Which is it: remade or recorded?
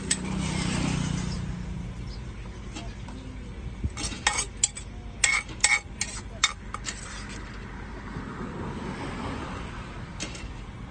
recorded